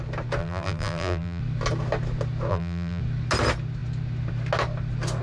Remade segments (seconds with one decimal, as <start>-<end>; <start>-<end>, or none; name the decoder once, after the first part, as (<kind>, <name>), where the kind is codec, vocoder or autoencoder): 0.4-1.4 (vocoder, BigVGAN v2); 2.5-3.0